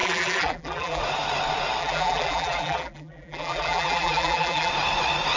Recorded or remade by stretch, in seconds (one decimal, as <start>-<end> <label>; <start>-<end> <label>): 0.0-1.0 remade; 1.0-1.8 recorded; 1.8-4.7 remade; 4.7-5.4 recorded